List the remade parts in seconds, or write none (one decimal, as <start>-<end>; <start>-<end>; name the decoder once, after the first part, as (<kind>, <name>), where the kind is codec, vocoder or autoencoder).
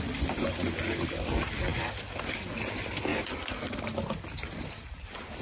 none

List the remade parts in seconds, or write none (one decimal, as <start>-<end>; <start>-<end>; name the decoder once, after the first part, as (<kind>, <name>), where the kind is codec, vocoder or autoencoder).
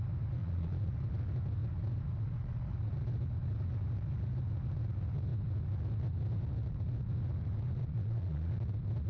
0.4-0.9 (vocoder, Vocos); 7.8-8.5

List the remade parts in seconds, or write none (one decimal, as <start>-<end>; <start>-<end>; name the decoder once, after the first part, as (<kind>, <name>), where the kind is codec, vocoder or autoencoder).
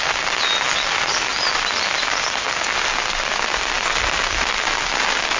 none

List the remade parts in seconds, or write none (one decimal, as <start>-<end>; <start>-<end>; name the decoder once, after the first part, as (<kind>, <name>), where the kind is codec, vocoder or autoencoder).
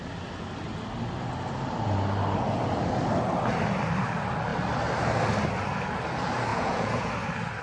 6.5-7.1 (vocoder, Vocos)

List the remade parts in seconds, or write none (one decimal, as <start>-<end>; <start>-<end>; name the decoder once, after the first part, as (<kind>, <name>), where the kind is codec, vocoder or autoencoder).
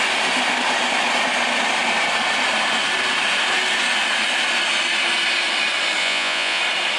6.0-6.6 (vocoder, Vocos)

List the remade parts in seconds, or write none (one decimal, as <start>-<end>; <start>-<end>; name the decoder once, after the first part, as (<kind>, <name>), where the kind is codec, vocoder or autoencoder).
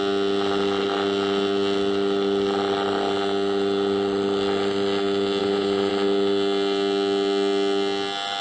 5.4-5.9 (vocoder, Vocos)